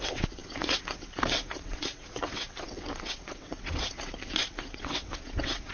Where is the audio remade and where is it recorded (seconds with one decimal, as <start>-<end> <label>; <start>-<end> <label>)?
0.0-5.7 remade

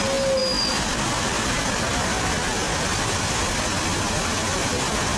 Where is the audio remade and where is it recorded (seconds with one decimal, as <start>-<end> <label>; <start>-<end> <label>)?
0.0-5.2 recorded

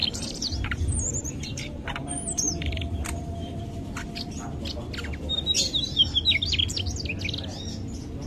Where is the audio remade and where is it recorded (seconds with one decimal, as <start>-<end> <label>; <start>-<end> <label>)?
0.0-3.6 remade; 3.6-8.3 recorded

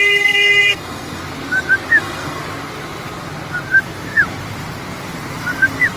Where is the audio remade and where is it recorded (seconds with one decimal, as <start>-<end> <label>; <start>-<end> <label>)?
0.0-1.2 remade; 1.2-2.0 recorded; 2.0-2.4 remade; 2.4-6.0 recorded

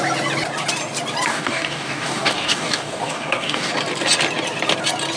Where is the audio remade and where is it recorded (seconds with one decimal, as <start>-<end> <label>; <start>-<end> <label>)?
0.0-1.3 recorded; 1.3-3.7 remade; 3.7-5.2 recorded

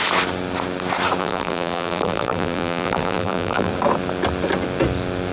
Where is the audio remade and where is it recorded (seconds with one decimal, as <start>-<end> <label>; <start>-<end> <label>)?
0.0-1.2 recorded; 1.2-3.7 remade; 3.7-5.3 recorded

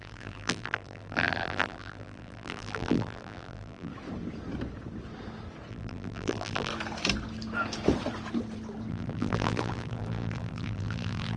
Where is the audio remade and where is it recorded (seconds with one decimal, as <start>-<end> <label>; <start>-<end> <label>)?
0.0-3.9 remade; 3.9-5.7 recorded; 5.7-6.7 remade; 6.7-8.9 recorded; 8.9-11.4 remade

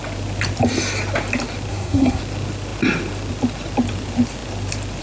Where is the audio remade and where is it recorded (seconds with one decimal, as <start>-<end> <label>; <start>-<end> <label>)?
0.0-1.7 recorded; 1.7-2.2 remade; 2.2-5.0 recorded